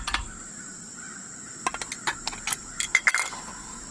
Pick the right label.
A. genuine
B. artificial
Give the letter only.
A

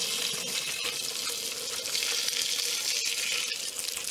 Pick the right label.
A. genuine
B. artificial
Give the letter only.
A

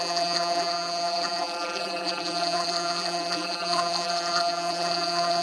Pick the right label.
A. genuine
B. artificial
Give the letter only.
B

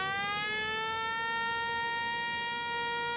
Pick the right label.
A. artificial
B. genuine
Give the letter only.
B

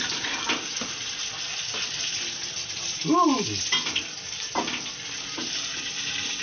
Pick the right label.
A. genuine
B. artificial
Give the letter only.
A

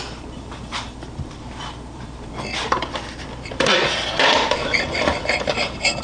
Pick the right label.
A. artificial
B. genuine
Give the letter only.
A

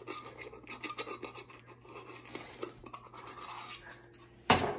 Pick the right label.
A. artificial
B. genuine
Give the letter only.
B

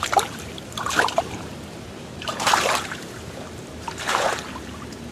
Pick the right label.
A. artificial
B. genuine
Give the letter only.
A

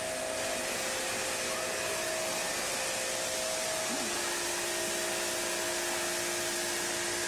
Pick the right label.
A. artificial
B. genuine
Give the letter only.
B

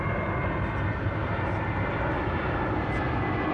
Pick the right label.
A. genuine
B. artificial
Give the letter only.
A